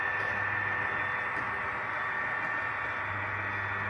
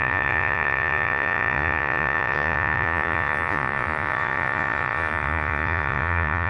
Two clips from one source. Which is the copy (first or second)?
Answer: second